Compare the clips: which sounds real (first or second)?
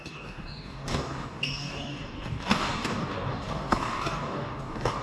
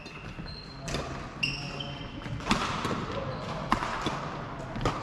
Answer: second